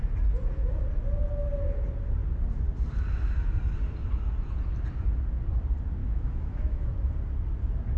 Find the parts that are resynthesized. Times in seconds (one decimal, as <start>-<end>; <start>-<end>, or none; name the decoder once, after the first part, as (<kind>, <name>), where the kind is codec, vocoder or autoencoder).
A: 6.0-6.9 (autoencoder, DAC-VAE)